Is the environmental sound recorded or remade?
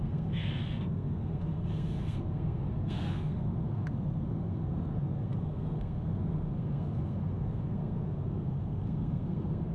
remade